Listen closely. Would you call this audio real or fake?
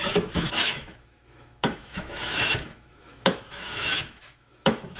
fake